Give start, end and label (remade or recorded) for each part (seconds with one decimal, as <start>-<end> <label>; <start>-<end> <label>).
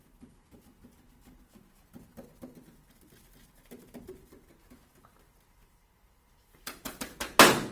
0.0-5.6 recorded; 5.6-7.0 remade; 7.0-7.7 recorded